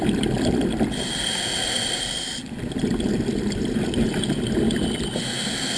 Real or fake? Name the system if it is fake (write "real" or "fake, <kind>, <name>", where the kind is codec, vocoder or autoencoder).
real